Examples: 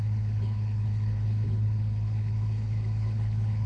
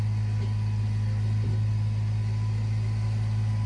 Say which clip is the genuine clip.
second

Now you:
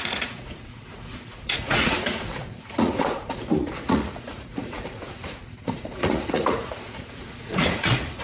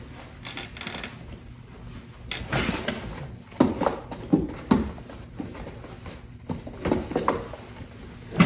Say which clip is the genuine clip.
second